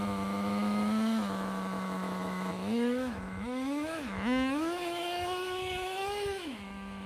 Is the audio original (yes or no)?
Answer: no